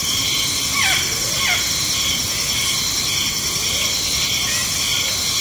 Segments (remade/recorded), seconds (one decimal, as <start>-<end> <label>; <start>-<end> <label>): 0.0-5.4 recorded

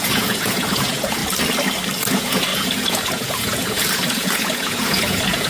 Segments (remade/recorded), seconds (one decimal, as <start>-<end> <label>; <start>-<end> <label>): 0.0-1.2 remade; 1.2-2.1 recorded; 2.1-5.5 remade

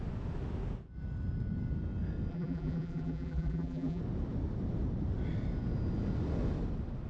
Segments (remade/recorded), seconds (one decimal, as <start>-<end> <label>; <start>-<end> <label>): 0.0-2.3 recorded; 2.3-4.0 remade; 4.0-7.1 recorded

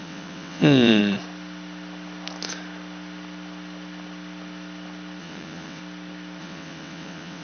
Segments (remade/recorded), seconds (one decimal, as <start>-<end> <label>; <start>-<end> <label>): 0.0-1.0 remade; 1.0-5.2 recorded; 5.2-5.8 remade; 5.8-6.4 recorded; 6.4-7.4 remade

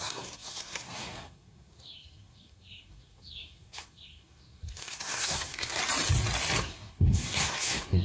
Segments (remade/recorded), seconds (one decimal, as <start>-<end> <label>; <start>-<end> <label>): 0.0-5.8 remade; 5.8-6.6 recorded; 6.6-8.0 remade

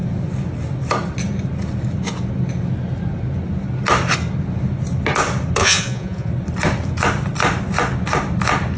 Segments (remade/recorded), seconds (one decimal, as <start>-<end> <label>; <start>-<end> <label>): 0.0-5.6 recorded; 5.6-6.3 remade; 6.3-8.8 recorded

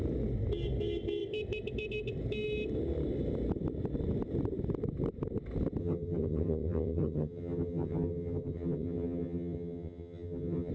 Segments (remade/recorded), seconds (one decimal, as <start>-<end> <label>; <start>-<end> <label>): 0.0-5.8 recorded; 5.8-10.7 remade